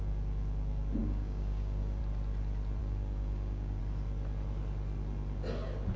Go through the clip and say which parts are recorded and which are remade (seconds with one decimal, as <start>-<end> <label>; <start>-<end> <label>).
0.0-1.0 recorded; 1.0-2.0 remade; 2.0-2.8 recorded; 2.8-3.8 remade; 3.8-6.0 recorded